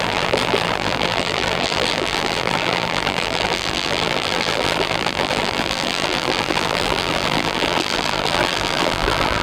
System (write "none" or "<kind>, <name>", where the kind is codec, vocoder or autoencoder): vocoder, BigVGAN v2